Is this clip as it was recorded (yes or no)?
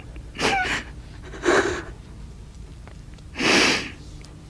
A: yes